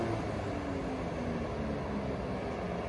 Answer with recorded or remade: recorded